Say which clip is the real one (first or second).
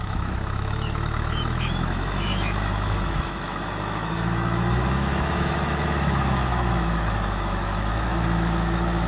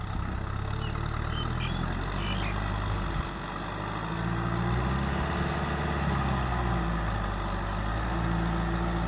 second